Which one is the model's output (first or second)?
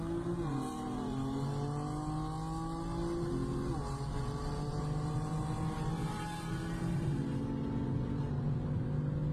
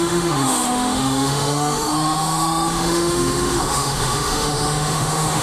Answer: second